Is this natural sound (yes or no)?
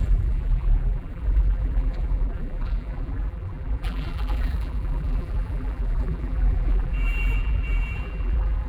no